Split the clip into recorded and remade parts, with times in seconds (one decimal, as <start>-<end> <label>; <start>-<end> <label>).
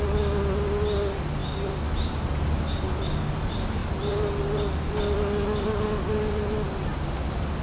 0.0-3.8 recorded; 3.8-6.4 remade; 6.4-7.6 recorded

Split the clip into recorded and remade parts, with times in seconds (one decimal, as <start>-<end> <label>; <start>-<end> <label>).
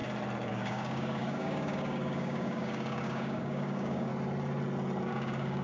0.0-0.5 recorded; 0.5-4.1 remade; 4.1-5.1 recorded; 5.1-5.6 remade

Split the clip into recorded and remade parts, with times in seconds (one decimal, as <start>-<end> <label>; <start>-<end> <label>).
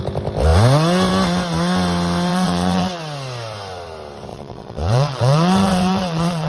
0.0-2.3 recorded; 2.3-3.0 remade; 3.0-4.3 recorded; 4.3-6.5 remade